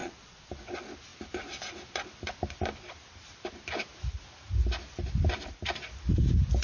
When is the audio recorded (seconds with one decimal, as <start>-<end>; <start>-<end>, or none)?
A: 0.5-6.6